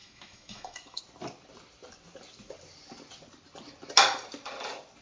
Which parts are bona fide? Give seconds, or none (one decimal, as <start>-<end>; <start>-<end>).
1.0-5.0